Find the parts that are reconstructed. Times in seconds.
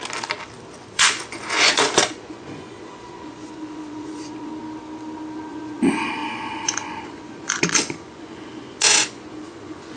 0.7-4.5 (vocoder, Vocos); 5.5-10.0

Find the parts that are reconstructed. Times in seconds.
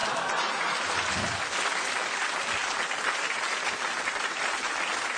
none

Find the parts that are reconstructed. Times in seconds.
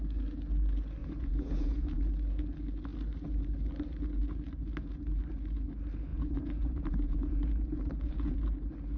1.0-2.0 (vocoder, Vocos); 6.1-8.4